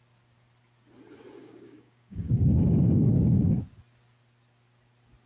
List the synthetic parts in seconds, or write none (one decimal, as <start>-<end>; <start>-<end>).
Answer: 1.4-3.6